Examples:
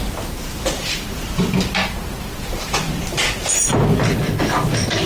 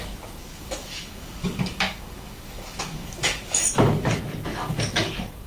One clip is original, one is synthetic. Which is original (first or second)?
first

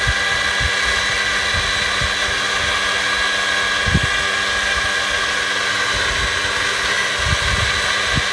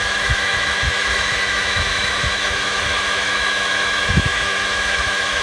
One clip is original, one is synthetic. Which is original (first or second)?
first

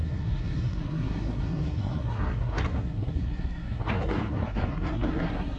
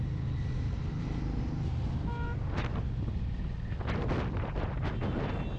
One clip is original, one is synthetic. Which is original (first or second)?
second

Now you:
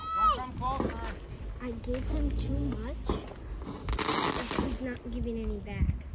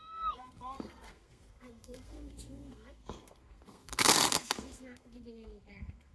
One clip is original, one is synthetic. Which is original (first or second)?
first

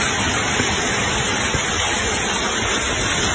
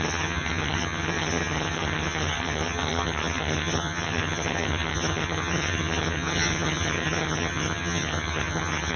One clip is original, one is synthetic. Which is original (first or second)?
first